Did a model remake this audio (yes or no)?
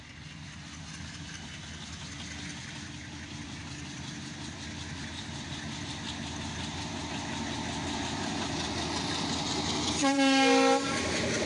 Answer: no